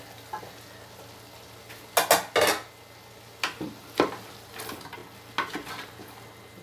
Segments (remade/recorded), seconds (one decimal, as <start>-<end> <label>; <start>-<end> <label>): 0.0-6.6 recorded